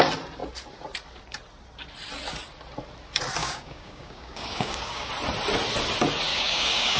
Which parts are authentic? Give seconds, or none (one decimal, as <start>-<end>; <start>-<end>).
0.0-3.4; 5.1-6.3

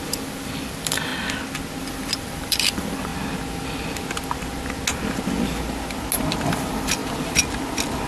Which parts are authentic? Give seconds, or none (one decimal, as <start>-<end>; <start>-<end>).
1.1-1.8; 3.1-6.5; 7.0-8.1

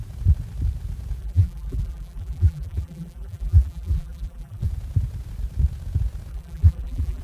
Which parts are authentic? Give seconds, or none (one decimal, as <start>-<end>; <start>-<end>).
0.0-1.2; 4.7-6.3

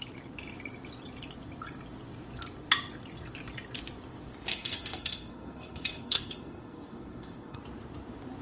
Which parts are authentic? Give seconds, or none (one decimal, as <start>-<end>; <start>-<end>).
0.0-4.5; 7.6-8.4

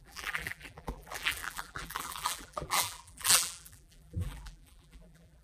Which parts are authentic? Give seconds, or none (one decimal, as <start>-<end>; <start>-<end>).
none

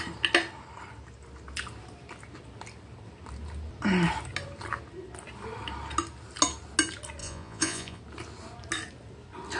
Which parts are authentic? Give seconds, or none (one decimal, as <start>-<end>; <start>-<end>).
0.0-7.2; 8.0-9.6

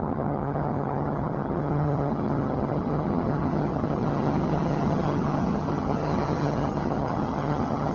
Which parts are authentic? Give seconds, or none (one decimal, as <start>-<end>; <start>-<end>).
none

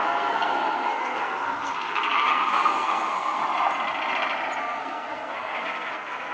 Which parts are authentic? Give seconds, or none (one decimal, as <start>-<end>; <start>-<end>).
3.4-4.6